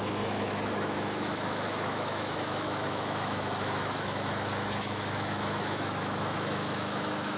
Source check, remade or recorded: remade